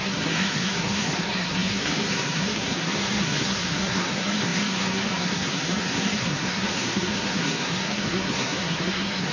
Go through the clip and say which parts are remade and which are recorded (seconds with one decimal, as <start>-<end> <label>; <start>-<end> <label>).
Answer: 0.0-9.3 remade